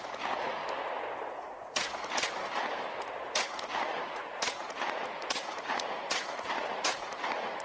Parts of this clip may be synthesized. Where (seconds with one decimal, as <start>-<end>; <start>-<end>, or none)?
0.0-0.6; 1.3-2.6; 3.1-7.6